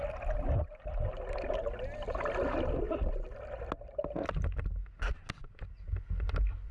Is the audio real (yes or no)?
yes